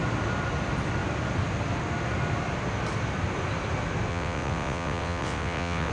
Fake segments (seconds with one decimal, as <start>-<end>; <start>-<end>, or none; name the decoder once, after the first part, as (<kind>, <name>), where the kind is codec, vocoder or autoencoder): 4.1-5.9 (vocoder, WaveNeXt)

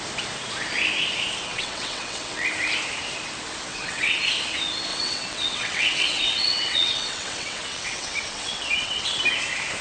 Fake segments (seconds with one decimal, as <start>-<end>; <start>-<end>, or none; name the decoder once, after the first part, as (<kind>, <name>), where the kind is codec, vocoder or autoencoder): 1.5-2.5 (vocoder, WaveNeXt); 3.7-4.2; 4.9-9.2

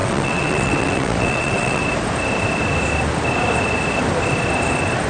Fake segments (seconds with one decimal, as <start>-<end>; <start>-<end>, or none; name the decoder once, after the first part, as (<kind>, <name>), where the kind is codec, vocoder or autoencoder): 0.0-1.8 (vocoder, WaveNeXt)

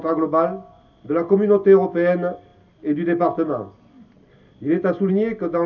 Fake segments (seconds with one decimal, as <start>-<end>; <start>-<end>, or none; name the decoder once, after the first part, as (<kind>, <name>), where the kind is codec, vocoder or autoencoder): none

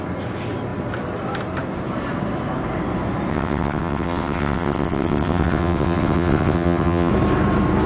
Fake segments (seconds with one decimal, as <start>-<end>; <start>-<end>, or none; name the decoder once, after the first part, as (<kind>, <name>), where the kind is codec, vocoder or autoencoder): 3.3-7.1 (vocoder, WaveNeXt)